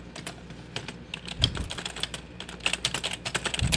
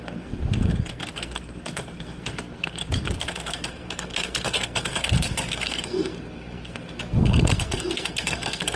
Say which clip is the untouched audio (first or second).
first